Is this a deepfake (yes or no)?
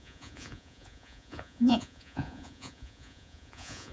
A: yes